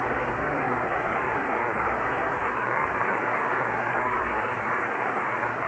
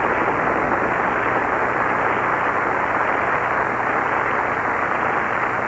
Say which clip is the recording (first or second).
second